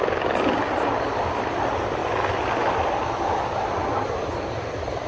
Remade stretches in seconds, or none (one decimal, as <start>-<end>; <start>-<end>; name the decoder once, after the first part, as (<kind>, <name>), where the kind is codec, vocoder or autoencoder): none